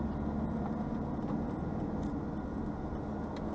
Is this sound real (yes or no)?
yes